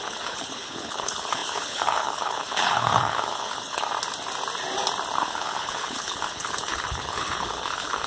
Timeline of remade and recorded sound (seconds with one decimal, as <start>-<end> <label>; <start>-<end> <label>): 0.0-3.8 remade; 3.8-5.2 recorded; 5.2-8.1 remade